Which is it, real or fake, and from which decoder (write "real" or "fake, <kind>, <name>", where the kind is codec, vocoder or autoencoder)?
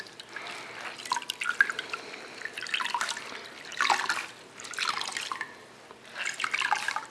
real